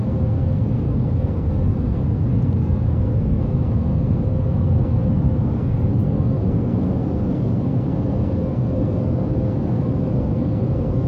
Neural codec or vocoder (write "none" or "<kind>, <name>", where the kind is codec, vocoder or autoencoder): codec, SNAC